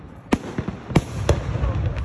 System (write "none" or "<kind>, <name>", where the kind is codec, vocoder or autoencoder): none